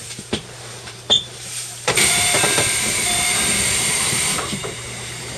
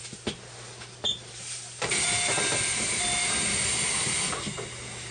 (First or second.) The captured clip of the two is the second